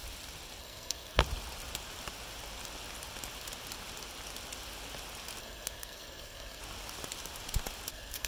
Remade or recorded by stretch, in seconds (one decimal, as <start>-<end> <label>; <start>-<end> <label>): 0.0-0.6 recorded; 0.6-1.2 remade; 1.2-5.4 recorded; 5.4-6.6 remade; 6.6-7.9 recorded; 7.9-8.3 remade